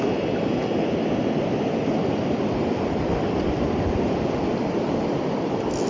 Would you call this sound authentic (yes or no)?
yes